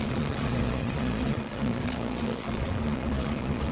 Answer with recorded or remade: remade